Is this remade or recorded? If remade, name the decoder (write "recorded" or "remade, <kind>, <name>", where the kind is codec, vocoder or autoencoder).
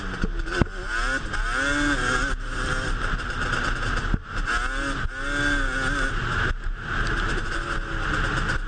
recorded